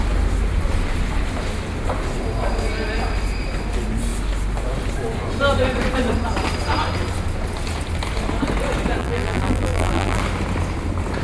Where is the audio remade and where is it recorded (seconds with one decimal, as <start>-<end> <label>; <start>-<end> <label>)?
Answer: 0.0-9.0 recorded; 9.0-10.2 remade; 10.2-11.2 recorded